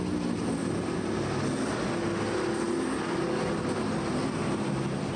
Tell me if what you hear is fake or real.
real